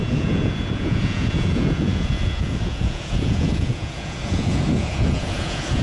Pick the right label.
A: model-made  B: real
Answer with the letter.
A